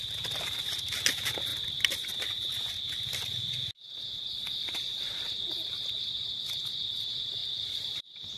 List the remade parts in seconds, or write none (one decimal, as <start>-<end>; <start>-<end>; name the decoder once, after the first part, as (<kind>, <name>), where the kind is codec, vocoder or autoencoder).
7.4-8.0 (vocoder, BigVGAN v2)